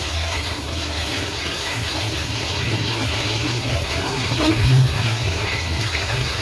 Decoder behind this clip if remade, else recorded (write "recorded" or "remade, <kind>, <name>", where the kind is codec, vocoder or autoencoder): remade, codec, SNAC